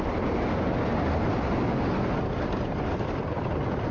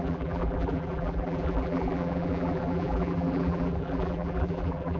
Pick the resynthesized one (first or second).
second